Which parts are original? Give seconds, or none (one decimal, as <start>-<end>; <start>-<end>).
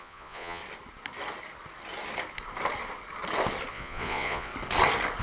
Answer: 0.6-3.7; 4.5-5.2